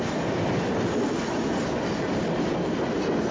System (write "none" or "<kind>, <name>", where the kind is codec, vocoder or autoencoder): none